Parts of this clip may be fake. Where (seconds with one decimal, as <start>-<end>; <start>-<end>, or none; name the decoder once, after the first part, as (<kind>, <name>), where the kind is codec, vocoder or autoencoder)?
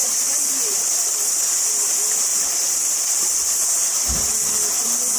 0.0-1.4 (vocoder, BigVGAN v2); 2.3-3.4